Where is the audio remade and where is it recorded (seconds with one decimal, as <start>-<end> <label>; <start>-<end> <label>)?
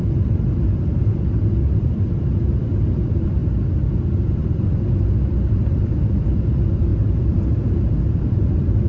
0.0-3.4 remade; 3.4-4.6 recorded; 4.6-8.9 remade